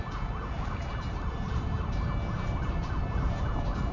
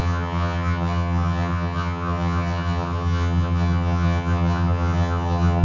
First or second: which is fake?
second